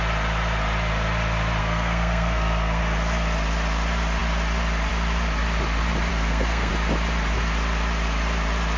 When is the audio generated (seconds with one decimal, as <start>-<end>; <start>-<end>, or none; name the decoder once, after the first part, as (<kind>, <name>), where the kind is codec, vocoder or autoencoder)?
1.6-2.8 (codec, SNAC); 6.1-6.7